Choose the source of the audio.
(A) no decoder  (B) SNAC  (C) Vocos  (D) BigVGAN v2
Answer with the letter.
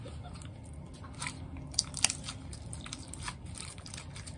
A